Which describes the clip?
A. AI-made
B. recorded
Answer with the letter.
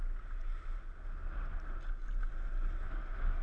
B